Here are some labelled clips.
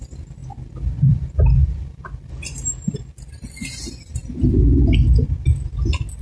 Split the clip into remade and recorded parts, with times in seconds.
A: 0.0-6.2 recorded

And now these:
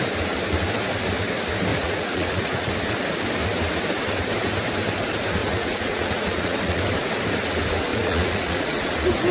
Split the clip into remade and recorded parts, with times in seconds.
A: 0.0-1.7 recorded; 1.7-2.7 remade; 2.7-5.4 recorded; 5.4-6.8 remade; 6.8-7.9 recorded; 7.9-8.9 remade; 8.9-9.3 recorded

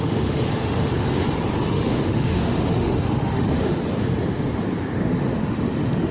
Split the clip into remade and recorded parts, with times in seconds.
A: 0.0-0.9 remade; 0.9-1.7 recorded; 1.7-3.8 remade; 3.8-5.0 recorded; 5.0-6.1 remade

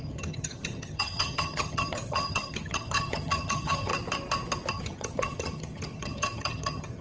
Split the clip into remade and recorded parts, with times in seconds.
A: 0.0-3.9 remade; 3.9-4.7 recorded; 4.7-7.0 remade